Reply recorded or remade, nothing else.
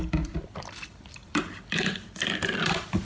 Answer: remade